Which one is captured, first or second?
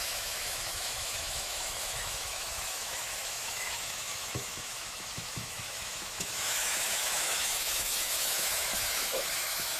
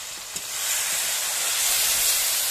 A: second